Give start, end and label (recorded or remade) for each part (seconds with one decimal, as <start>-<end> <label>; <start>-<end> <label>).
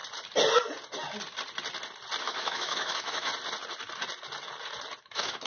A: 0.0-2.2 recorded; 2.2-3.3 remade; 3.3-5.0 recorded; 5.0-5.5 remade